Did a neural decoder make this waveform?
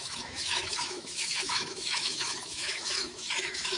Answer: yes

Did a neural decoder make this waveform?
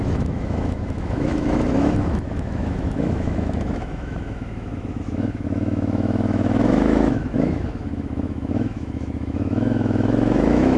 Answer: yes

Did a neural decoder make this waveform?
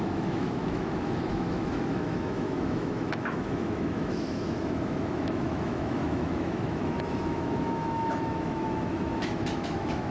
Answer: yes